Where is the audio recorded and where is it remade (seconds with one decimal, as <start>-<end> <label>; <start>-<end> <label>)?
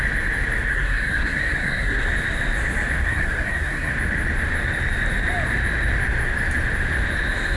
0.0-0.7 recorded; 0.7-2.1 remade; 2.1-3.0 recorded; 3.0-3.9 remade; 3.9-7.6 recorded